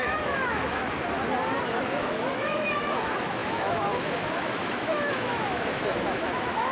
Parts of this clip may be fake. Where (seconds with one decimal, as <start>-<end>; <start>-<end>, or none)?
0.0-0.8; 1.8-6.7